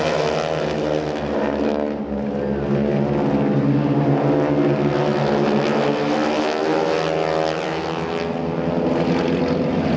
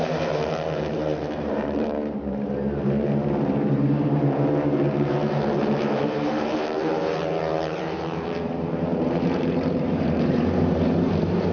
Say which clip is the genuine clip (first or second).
first